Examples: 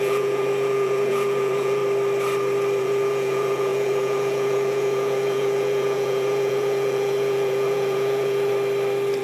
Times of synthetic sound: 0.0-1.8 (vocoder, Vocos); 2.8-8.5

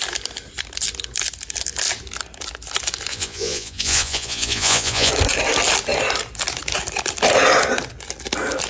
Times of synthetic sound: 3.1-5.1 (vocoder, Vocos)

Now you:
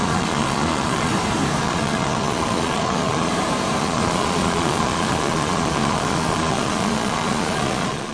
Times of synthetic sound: 0.0-1.1 (vocoder, Vocos); 1.6-3.3; 3.8-8.1

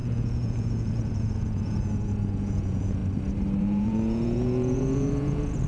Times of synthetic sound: 0.0-3.0 (vocoder, Vocos); 3.6-5.7

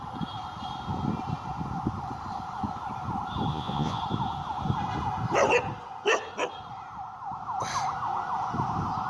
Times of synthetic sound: 3.5-4.0 (vocoder, Vocos)